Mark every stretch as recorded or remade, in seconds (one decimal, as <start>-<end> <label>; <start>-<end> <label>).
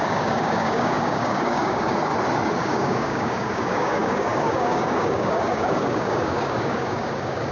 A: 0.0-2.1 remade; 2.1-2.6 recorded; 2.6-7.5 remade